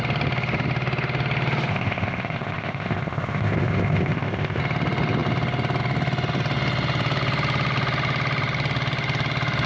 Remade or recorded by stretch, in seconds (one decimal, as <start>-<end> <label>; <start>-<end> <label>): 0.0-1.7 recorded; 1.7-4.6 remade; 4.6-9.7 recorded